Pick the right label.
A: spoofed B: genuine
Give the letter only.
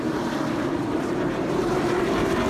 A